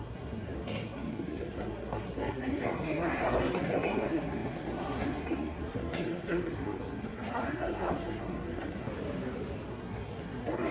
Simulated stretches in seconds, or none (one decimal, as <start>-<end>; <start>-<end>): 0.0-8.9; 9.7-10.7